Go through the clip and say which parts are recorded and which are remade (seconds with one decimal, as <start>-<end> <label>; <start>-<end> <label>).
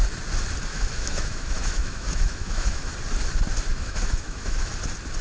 0.0-0.7 recorded; 0.7-2.9 remade; 2.9-3.7 recorded; 3.7-4.7 remade; 4.7-5.2 recorded